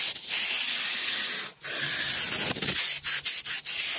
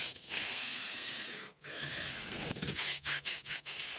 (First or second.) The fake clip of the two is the second